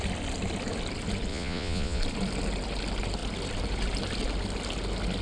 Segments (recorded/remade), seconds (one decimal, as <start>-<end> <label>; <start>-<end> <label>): 0.0-1.3 recorded; 1.3-2.0 remade; 2.0-5.2 recorded